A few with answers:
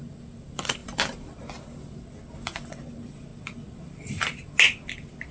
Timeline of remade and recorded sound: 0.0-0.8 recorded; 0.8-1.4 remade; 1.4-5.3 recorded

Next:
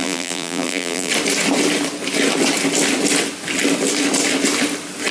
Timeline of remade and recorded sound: 0.0-1.1 remade; 1.1-5.1 recorded

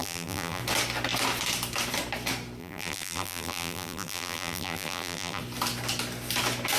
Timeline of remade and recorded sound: 0.0-0.6 remade; 0.6-2.6 recorded; 2.6-5.4 remade; 5.4-6.8 recorded

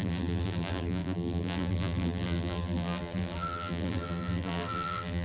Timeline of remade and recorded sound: 0.0-5.2 remade

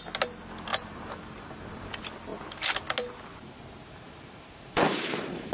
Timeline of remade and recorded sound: 0.0-0.7 recorded; 0.7-1.9 remade; 1.9-3.8 recorded; 3.8-5.5 remade